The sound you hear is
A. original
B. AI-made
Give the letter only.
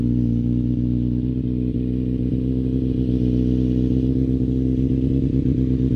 A